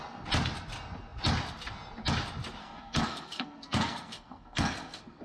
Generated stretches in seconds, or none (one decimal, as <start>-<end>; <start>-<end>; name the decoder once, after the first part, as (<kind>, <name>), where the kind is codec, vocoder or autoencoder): 2.6-5.2 (codec, SNAC)